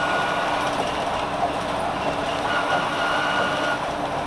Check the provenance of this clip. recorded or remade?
recorded